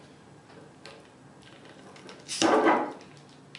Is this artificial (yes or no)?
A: no